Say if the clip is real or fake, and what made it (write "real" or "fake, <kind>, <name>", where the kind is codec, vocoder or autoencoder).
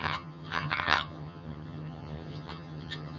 fake, vocoder, HiFi-GAN